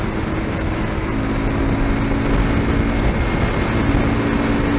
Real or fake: real